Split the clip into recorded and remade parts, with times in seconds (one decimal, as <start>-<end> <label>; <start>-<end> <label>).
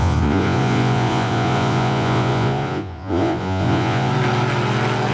0.0-4.1 remade; 4.1-5.1 recorded